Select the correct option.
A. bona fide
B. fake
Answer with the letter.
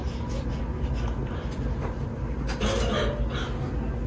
A